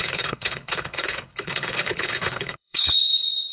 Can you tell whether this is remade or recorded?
remade